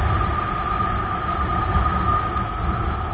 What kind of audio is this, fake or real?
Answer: real